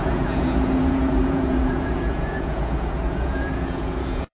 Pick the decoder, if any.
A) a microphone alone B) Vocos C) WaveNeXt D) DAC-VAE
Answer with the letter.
B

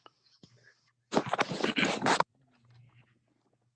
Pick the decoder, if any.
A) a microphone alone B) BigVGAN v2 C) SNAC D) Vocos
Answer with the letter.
A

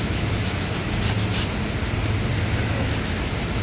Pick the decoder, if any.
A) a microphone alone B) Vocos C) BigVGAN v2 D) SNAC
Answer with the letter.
A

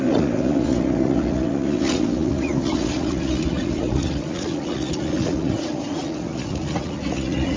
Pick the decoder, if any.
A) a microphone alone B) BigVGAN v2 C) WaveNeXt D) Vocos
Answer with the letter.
D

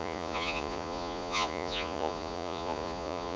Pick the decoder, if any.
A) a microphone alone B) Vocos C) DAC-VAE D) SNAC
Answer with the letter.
B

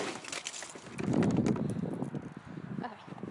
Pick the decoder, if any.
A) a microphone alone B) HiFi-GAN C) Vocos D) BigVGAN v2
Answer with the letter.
A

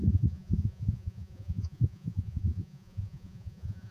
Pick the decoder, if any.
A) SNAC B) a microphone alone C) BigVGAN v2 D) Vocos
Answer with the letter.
D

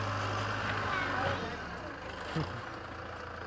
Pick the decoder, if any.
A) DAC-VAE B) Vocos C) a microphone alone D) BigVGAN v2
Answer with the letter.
C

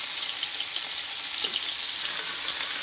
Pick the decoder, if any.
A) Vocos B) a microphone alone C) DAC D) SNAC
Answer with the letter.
B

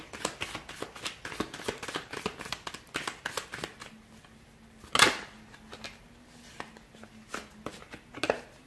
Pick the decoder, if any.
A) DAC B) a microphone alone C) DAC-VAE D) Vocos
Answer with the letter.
B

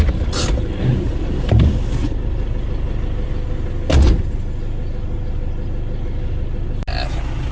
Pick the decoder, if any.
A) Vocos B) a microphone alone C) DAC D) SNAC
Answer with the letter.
B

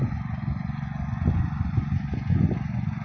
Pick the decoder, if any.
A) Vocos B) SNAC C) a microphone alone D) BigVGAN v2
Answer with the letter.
A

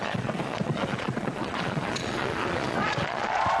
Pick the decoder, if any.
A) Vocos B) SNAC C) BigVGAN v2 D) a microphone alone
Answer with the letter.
A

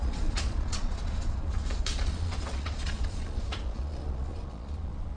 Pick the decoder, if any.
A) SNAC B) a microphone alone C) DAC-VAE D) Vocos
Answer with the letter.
D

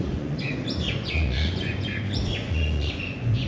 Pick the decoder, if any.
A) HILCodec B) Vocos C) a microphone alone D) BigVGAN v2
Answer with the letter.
B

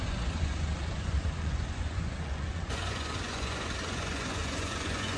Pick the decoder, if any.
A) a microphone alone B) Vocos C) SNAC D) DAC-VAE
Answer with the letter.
B